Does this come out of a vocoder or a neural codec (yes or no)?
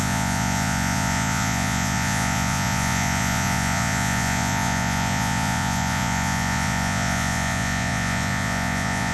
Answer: yes